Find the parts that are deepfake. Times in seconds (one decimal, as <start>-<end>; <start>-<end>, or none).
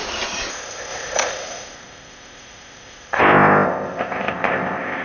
0.5-5.0